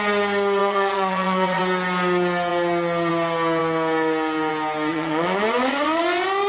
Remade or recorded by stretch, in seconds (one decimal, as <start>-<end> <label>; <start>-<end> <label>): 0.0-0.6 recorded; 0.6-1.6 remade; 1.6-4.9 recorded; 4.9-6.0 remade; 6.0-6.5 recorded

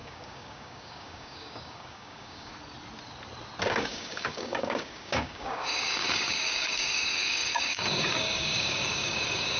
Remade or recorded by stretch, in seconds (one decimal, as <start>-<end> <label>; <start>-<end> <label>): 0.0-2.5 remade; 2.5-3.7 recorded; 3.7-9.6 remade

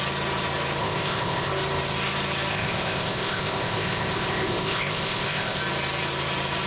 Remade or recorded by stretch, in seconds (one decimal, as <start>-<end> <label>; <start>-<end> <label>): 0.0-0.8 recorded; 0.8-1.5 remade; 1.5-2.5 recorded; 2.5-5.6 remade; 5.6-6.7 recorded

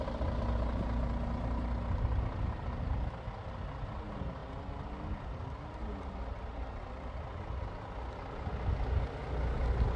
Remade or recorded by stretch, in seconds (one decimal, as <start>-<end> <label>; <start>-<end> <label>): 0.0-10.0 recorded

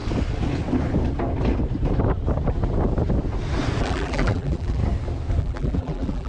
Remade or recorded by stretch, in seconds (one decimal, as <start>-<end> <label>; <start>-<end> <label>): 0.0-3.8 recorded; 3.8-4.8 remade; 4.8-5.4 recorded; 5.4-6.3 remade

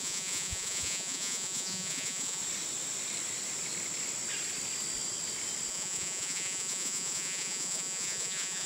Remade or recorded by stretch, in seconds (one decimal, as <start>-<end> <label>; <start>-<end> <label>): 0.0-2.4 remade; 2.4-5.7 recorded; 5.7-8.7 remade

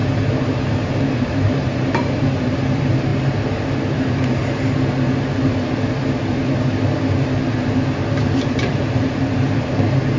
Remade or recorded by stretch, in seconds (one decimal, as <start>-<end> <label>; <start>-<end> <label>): 0.0-0.5 recorded; 0.5-3.1 remade; 3.1-8.2 recorded; 8.2-10.2 remade

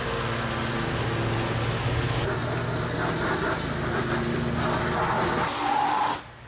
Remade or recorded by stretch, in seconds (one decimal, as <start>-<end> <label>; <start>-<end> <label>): 0.0-6.5 recorded